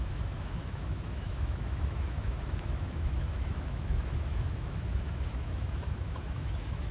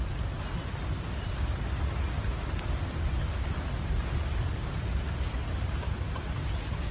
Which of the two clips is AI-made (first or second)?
first